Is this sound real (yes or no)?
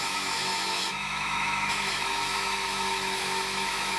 no